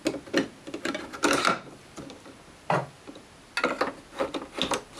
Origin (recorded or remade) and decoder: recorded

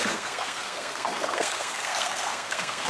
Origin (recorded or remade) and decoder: remade, codec, SNAC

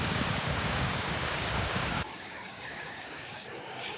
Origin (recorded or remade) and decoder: remade, codec, DAC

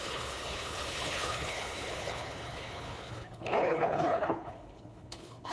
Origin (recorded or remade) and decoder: remade, codec, HILCodec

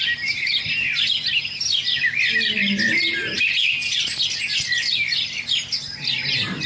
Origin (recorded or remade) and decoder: recorded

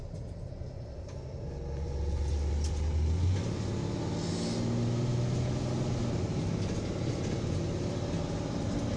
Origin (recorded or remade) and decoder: recorded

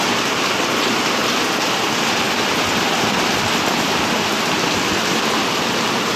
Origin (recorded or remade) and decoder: recorded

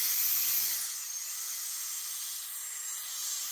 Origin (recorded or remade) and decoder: recorded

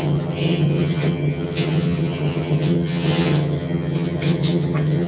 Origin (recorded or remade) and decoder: remade, vocoder, HiFi-GAN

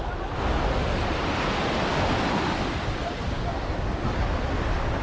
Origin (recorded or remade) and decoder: recorded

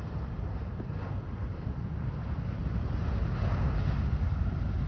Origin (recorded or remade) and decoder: recorded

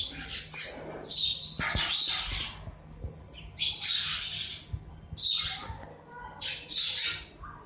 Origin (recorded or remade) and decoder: recorded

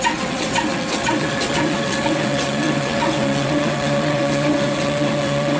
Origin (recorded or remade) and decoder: remade, vocoder, WaveNeXt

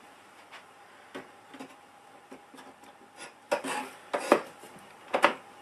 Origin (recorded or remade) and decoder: recorded